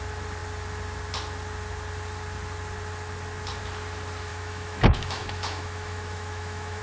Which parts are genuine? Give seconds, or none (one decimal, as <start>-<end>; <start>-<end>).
0.0-4.3